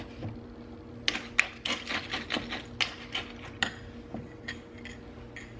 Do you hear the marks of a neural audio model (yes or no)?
no